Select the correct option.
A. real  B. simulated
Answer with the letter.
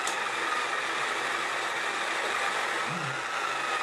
A